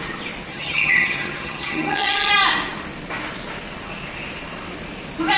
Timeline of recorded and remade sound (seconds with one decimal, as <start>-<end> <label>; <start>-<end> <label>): 0.0-0.5 recorded; 0.5-2.3 remade; 2.3-5.4 recorded

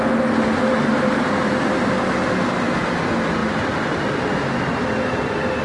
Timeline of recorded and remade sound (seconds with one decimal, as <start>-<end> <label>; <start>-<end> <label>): 0.0-5.6 recorded